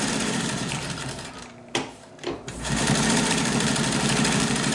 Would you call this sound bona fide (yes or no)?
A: no